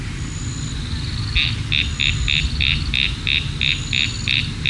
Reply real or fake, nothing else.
real